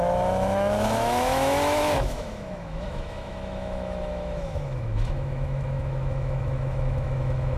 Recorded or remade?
remade